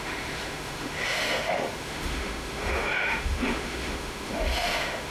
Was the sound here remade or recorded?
remade